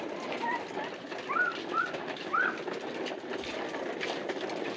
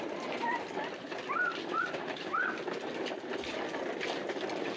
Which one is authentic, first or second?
first